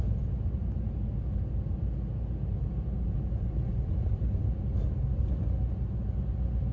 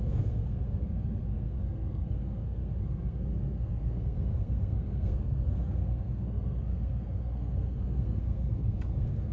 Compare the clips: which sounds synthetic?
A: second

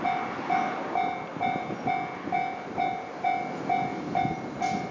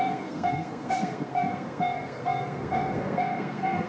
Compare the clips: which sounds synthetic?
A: second